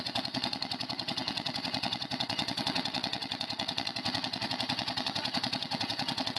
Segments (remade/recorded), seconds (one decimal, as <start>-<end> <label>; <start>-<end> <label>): 0.0-6.4 remade